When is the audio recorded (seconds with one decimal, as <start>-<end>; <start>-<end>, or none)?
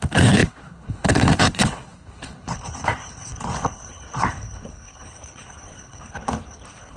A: none